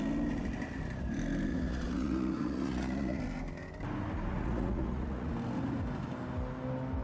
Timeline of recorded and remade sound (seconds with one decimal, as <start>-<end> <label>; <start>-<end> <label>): 0.0-1.5 recorded; 1.5-3.2 remade; 3.2-4.3 recorded; 4.3-5.3 remade; 5.3-7.0 recorded